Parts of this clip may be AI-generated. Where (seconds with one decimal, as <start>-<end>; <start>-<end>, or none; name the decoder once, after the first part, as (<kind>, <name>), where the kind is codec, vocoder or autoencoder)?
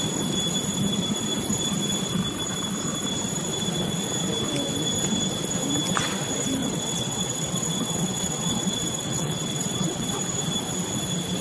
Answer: 6.6-10.1 (vocoder, WaveNeXt)